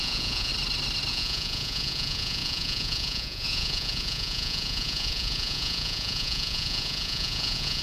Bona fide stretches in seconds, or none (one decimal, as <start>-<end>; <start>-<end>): 0.5-1.1